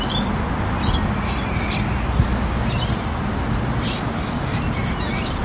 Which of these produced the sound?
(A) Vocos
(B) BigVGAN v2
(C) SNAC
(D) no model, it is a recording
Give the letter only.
D